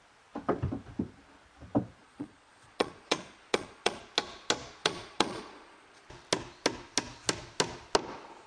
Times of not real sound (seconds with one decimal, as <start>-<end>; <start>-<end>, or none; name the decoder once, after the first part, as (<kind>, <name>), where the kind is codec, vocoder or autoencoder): 2.0-4.0 (vocoder, Vocos); 4.8-6.0